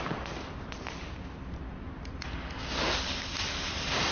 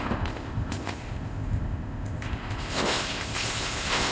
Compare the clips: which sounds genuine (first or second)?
first